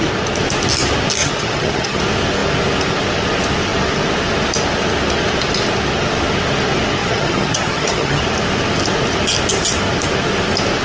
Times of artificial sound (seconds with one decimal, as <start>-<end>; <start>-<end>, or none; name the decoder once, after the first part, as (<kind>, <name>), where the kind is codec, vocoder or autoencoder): 1.2-2.0 (vocoder, HiFi-GAN); 7.0-8.2